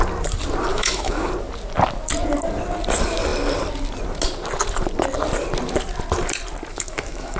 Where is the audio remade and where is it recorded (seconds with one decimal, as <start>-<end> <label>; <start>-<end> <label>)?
0.0-0.7 recorded; 0.7-1.3 remade; 1.3-6.7 recorded; 6.7-7.4 remade